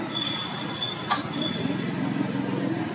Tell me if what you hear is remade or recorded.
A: recorded